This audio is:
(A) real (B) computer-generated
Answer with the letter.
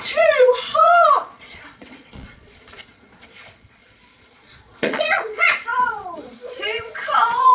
B